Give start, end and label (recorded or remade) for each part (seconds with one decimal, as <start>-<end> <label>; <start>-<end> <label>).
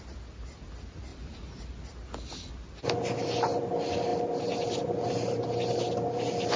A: 0.0-6.6 recorded